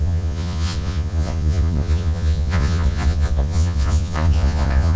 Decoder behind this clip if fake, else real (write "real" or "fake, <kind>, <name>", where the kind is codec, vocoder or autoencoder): fake, vocoder, Vocos